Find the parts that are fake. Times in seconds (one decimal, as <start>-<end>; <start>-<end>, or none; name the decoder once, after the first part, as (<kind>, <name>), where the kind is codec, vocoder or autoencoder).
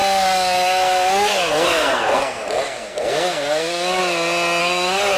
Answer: 0.0-4.0 (codec, SNAC); 4.6-5.2